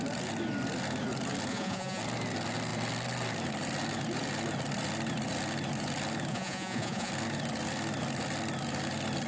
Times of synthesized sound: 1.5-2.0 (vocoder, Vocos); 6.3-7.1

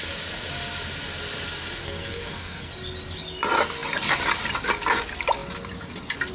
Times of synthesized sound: 1.8-2.7 (codec, SNAC)

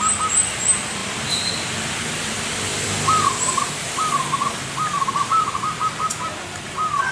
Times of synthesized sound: 1.0-1.9 (vocoder, BigVGAN v2); 2.7-4.1

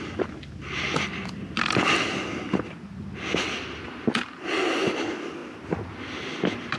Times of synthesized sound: none

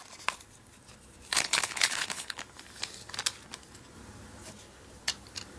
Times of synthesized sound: 1.3-2.4 (codec, HILCodec)

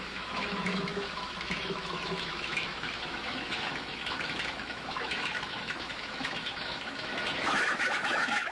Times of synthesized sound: 0.0-8.5 (autoencoder, DAC-VAE)